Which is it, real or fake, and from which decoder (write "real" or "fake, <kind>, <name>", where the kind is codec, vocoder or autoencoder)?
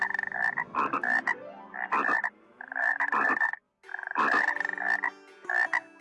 real